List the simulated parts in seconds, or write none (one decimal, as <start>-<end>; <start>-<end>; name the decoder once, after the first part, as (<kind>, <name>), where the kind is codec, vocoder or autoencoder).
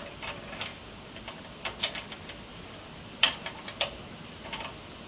2.5-5.1 (vocoder, BigVGAN v2)